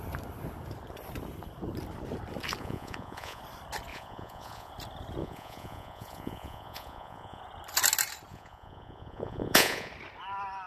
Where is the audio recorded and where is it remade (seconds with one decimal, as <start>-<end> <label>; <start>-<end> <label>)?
0.0-2.6 recorded; 2.6-3.4 remade; 3.4-3.9 recorded; 3.9-4.7 remade; 4.7-5.2 recorded; 5.2-7.4 remade; 7.4-8.3 recorded; 8.3-9.9 remade; 9.9-10.7 recorded